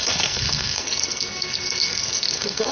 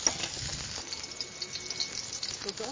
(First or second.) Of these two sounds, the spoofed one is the first